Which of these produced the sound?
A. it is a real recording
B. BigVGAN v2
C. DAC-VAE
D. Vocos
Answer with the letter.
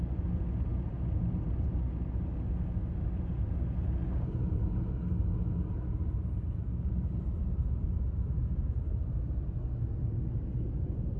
A